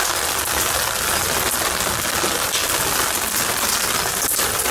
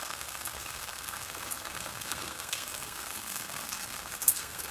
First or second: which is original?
first